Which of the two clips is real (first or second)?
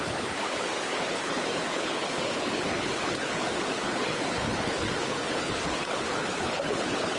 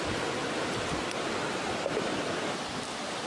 second